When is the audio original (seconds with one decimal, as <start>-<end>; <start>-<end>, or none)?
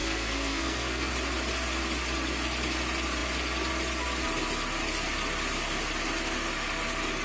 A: 1.1-7.2